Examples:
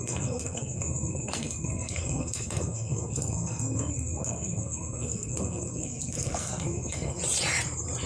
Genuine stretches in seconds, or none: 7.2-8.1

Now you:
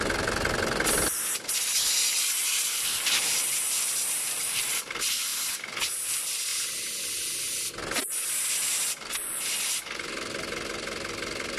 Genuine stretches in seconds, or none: 0.0-2.0; 4.7-11.6

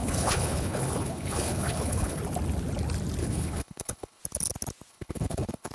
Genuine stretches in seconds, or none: 2.2-3.2; 4.2-4.9